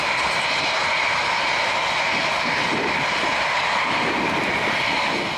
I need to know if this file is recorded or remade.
recorded